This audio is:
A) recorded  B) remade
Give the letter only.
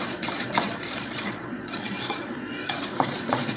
B